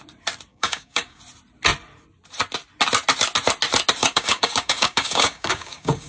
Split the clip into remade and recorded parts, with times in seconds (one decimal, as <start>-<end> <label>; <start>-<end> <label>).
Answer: 0.0-0.5 recorded; 0.5-1.2 remade; 1.2-4.0 recorded; 4.0-6.1 remade